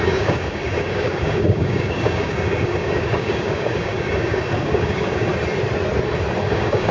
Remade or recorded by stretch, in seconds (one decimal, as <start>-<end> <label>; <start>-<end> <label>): 0.0-5.3 remade; 5.3-6.4 recorded; 6.4-6.9 remade

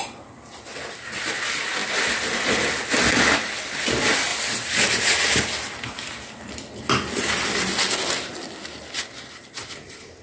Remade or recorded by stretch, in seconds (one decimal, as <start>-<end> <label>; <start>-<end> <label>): 0.0-10.2 recorded